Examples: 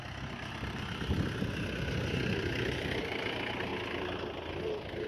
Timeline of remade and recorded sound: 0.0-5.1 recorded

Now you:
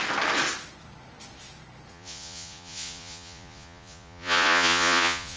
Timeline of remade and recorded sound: 0.0-1.9 recorded; 1.9-5.4 remade

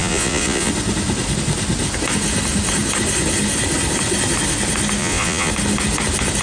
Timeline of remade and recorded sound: 0.0-0.7 remade; 0.7-5.0 recorded; 5.0-5.5 remade; 5.5-6.4 recorded